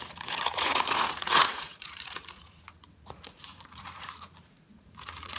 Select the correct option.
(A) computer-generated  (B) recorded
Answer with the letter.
A